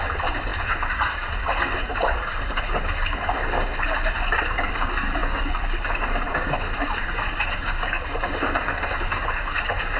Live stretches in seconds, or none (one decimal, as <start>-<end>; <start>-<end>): none